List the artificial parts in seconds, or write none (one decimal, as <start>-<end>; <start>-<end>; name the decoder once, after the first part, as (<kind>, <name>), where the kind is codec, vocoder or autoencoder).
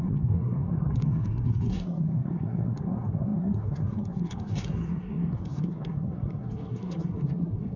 0.0-7.8 (codec, SNAC)